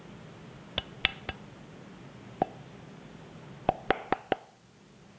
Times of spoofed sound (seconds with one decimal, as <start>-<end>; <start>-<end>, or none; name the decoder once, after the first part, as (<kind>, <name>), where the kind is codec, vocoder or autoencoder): none